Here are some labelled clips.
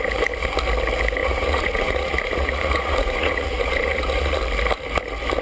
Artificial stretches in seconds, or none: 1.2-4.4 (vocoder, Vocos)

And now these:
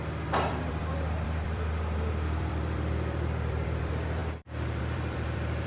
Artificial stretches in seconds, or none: 0.0-4.2 (vocoder, BigVGAN v2); 4.8-5.7

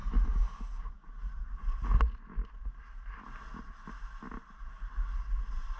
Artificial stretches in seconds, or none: none

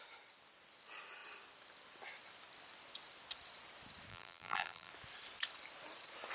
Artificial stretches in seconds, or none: 4.1-4.9 (vocoder, BigVGAN v2)

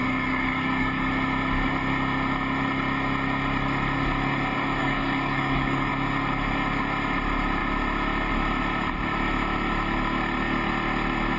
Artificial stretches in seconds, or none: 0.0-1.1 (codec, DAC); 4.8-5.9

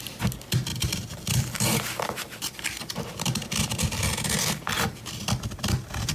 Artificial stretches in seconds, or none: 0.7-4.4 (vocoder, BigVGAN v2)